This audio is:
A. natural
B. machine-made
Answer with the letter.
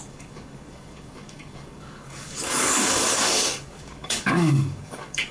B